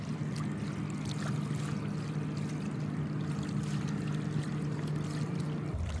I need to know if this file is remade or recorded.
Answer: recorded